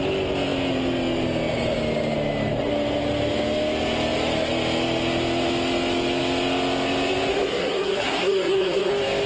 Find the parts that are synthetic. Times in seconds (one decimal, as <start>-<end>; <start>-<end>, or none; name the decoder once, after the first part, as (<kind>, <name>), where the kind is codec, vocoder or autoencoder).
7.3-8.9 (codec, SNAC)

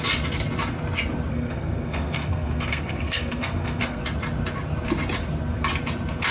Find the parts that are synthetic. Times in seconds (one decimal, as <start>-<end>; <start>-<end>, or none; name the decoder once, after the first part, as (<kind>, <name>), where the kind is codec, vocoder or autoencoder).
1.3-4.0 (codec, SNAC)